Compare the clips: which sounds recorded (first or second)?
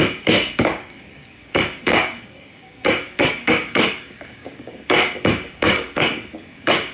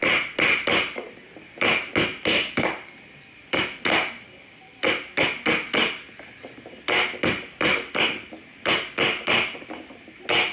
second